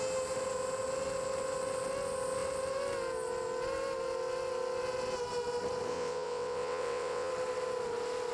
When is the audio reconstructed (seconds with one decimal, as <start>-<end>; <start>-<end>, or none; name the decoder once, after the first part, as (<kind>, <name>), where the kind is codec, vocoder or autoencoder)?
5.9-7.3 (vocoder, WaveNeXt)

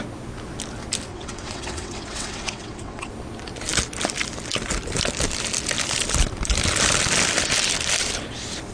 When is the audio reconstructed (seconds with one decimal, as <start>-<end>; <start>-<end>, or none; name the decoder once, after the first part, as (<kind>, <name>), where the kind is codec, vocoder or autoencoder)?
1.1-3.1 (vocoder, WaveNeXt)

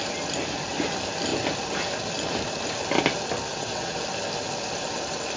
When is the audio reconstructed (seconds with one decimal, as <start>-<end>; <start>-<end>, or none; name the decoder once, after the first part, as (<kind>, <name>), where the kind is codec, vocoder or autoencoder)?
3.5-4.0 (vocoder, WaveNeXt)

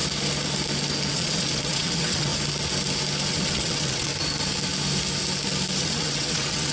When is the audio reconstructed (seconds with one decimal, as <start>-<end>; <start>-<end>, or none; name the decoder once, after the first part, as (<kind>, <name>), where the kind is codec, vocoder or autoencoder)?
1.1-2.3 (vocoder, WaveNeXt); 3.3-4.1; 5.8-6.7

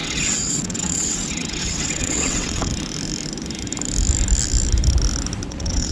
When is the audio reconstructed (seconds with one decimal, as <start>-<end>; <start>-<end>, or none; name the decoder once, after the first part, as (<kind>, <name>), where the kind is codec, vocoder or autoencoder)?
0.0-2.7 (vocoder, WaveNeXt); 5.5-5.9

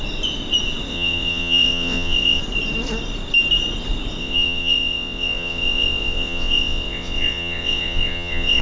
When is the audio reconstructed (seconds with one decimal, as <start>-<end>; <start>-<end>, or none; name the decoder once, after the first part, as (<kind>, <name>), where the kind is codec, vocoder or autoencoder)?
0.9-2.4 (vocoder, WaveNeXt); 4.2-8.6

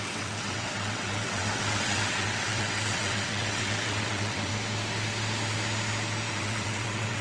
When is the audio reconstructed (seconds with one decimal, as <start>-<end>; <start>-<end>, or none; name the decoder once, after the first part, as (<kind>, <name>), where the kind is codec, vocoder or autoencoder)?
0.0-4.5 (vocoder, WaveNeXt); 6.3-7.2

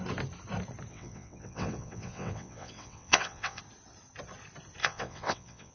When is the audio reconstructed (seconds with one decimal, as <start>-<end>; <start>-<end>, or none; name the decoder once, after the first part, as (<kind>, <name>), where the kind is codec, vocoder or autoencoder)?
0.9-3.6 (vocoder, WaveNeXt); 4.8-5.7